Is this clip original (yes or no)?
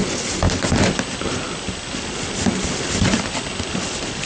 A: yes